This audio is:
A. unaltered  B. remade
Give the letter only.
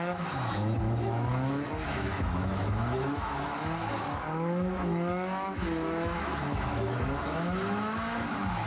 B